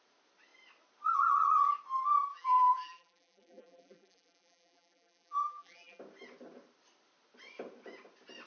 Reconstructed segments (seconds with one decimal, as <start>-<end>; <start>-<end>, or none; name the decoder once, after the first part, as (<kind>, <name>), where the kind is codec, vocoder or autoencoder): 2.3-6.0 (vocoder, BigVGAN v2)